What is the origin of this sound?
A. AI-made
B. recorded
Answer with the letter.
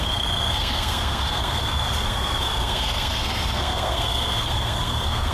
A